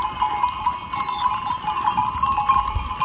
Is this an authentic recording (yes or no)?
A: yes